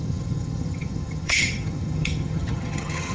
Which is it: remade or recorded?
remade